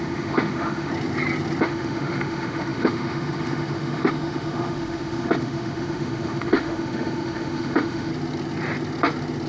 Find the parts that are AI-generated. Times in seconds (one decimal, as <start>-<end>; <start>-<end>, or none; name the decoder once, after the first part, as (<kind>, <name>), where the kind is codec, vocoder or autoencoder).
0.0-0.9 (autoencoder, DAC-VAE); 1.6-8.1